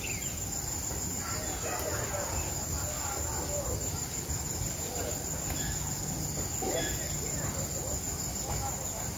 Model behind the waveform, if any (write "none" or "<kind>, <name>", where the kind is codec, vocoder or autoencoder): none